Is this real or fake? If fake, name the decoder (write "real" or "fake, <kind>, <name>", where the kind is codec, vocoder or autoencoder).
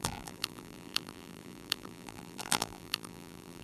fake, vocoder, BigVGAN v2